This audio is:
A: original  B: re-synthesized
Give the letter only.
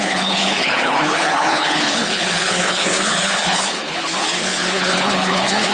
B